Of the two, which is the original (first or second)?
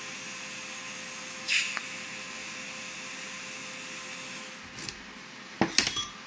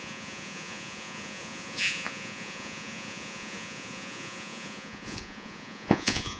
first